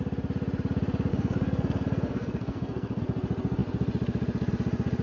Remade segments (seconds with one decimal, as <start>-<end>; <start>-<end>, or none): 1.1-3.0